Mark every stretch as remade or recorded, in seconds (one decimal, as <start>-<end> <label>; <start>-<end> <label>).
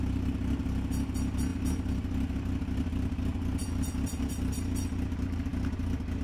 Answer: 0.0-6.2 recorded